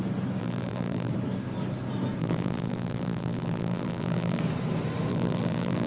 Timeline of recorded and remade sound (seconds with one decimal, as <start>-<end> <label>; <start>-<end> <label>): 0.0-0.4 recorded; 0.4-1.1 remade; 1.1-2.2 recorded; 2.2-4.4 remade; 4.4-5.1 recorded; 5.1-5.9 remade

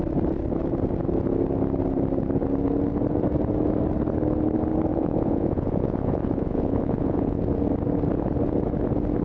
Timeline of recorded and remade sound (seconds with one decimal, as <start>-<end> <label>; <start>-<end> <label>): 0.0-4.9 recorded; 4.9-7.4 remade; 7.4-9.2 recorded